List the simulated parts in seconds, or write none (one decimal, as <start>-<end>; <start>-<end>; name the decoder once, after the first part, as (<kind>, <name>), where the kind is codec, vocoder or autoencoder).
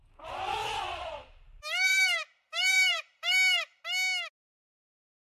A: 0.6-3.8 (vocoder, BigVGAN v2)